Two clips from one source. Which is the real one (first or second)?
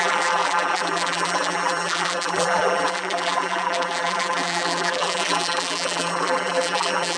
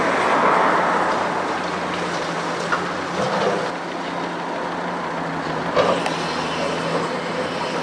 second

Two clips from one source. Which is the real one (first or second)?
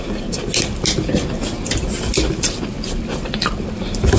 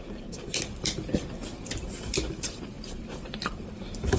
first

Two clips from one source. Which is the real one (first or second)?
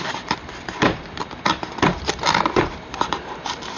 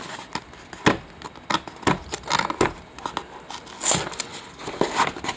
second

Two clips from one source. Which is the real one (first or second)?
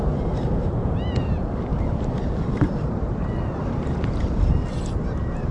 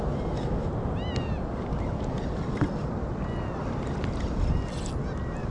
second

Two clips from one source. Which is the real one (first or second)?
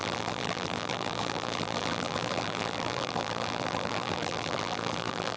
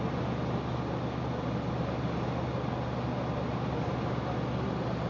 second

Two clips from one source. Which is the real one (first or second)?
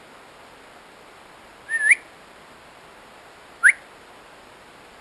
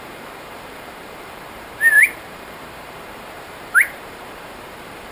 first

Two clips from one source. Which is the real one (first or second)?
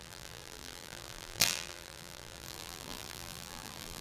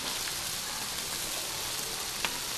second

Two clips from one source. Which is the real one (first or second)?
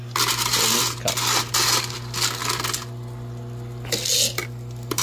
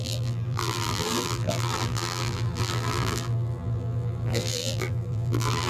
first